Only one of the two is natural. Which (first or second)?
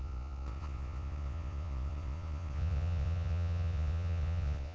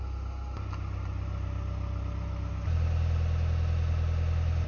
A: second